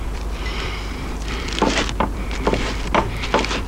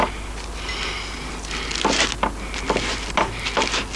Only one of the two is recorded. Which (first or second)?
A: second